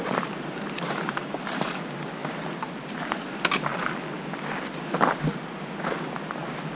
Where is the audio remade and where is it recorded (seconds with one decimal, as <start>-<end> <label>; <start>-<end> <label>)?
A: 0.0-1.6 remade; 1.6-2.2 recorded; 2.2-2.9 remade; 2.9-6.8 recorded